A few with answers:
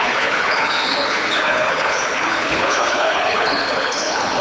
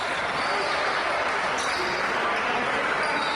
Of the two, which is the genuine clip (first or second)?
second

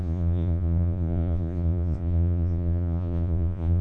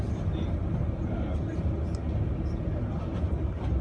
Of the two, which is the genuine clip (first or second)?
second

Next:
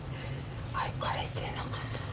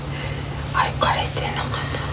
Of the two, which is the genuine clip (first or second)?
second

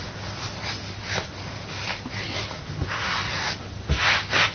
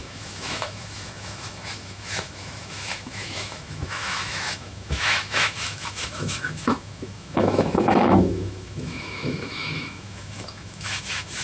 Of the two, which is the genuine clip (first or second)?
first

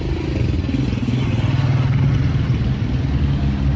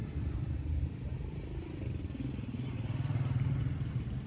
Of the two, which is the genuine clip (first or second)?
first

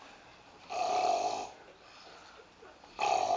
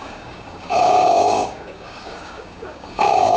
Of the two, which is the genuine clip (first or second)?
first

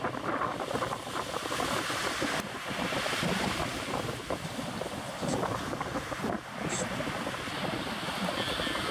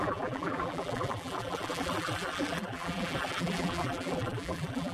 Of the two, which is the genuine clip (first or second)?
first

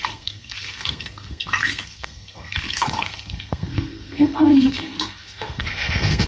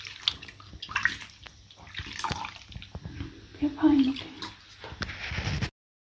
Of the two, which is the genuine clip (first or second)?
second